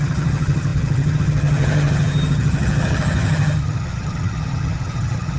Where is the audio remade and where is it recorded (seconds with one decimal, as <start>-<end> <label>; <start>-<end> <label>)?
0.0-5.4 remade